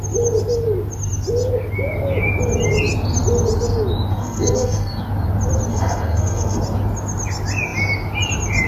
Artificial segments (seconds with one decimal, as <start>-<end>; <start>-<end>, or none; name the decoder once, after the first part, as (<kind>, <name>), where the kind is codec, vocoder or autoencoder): 4.1-5.0 (codec, SNAC); 5.7-6.6